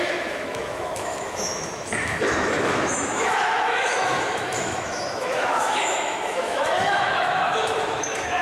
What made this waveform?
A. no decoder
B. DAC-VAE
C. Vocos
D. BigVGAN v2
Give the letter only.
B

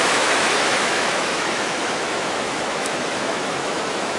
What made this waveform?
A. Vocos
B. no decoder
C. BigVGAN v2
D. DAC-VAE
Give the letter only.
D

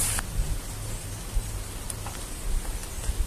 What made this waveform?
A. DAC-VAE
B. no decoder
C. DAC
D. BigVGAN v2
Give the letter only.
B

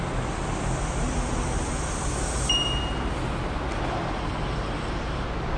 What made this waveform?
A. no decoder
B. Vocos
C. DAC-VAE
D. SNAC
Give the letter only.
A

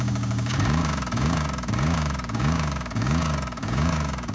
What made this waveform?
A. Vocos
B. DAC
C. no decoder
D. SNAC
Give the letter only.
B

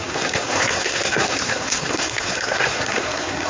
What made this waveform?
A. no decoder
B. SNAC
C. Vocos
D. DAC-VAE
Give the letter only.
B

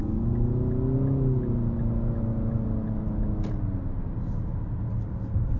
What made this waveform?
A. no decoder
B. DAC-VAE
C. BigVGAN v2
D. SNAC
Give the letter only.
A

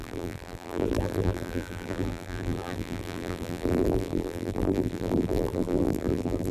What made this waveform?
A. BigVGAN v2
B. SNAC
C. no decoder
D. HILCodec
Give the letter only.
A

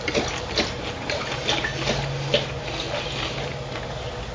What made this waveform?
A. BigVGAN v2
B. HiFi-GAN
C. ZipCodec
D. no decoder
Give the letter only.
D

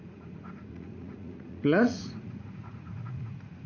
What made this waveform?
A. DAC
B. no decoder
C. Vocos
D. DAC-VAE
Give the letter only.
C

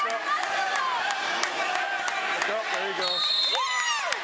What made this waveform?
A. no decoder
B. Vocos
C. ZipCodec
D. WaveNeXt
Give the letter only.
A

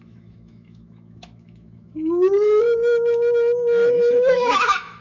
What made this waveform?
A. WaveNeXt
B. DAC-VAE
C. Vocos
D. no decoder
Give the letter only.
B